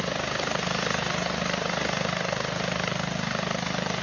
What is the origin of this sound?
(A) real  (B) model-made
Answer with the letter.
A